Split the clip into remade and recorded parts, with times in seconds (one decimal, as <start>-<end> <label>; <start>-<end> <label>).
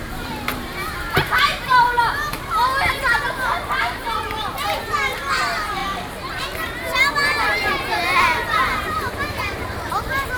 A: 0.0-10.4 remade